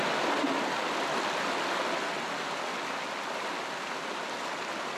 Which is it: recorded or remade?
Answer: recorded